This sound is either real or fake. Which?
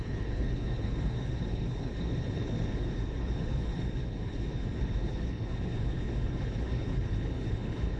fake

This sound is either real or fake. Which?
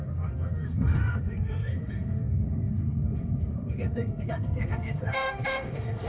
fake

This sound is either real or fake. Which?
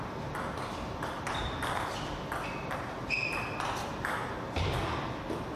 real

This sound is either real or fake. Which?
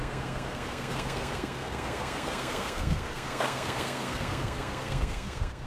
fake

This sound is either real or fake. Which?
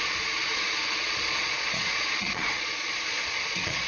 fake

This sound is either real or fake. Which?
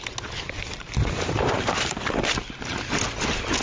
real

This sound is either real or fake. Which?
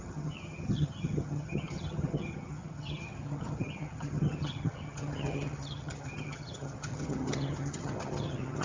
fake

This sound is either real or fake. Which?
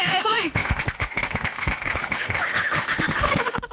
fake